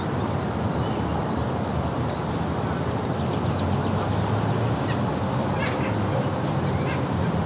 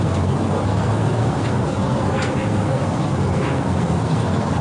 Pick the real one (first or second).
first